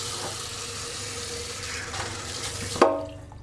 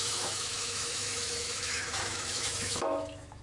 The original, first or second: first